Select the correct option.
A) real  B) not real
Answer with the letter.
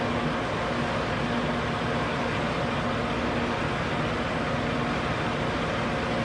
A